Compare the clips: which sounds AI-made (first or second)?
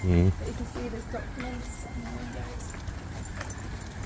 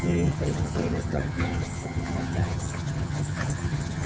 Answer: second